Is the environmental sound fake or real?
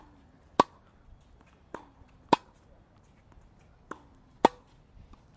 real